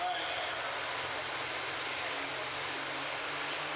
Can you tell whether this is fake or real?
real